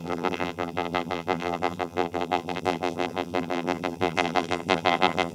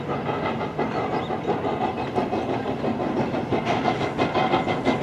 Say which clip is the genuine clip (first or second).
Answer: second